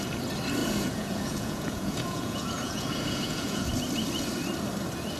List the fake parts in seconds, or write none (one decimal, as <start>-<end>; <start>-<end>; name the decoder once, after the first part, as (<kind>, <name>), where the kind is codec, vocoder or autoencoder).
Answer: 0.6-3.7 (vocoder, Vocos)